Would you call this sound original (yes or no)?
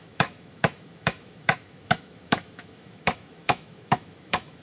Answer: no